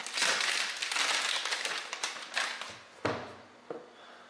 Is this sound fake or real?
real